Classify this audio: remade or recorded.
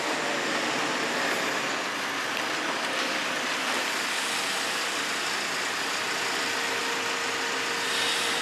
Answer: recorded